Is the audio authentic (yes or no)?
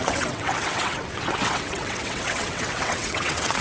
no